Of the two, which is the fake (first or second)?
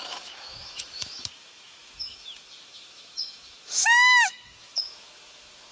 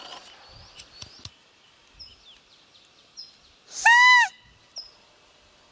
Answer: first